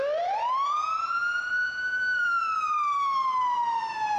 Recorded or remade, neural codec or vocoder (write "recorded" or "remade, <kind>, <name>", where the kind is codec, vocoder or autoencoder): remade, vocoder, BigVGAN v2